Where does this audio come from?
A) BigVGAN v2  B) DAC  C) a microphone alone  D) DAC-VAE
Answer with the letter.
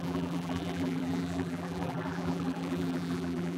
A